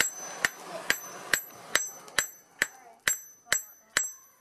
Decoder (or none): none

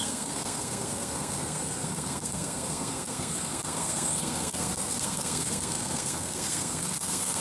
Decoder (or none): codec, SNAC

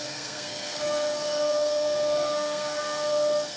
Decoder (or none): codec, SNAC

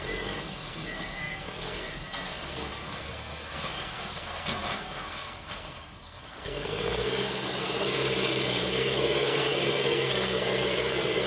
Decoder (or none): codec, SNAC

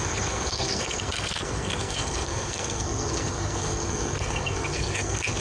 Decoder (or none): codec, SNAC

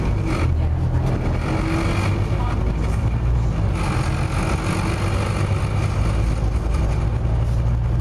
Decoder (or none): none